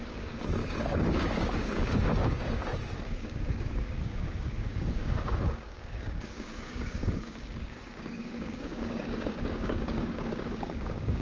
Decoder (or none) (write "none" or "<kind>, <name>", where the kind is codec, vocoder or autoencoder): codec, DAC